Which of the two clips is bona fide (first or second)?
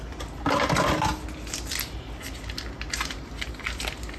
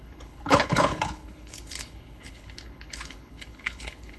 first